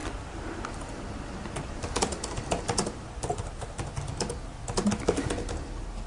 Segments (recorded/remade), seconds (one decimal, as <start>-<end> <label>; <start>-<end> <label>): 0.0-6.1 recorded